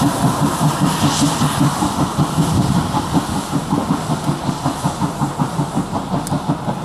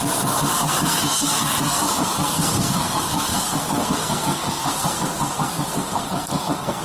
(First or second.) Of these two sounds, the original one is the first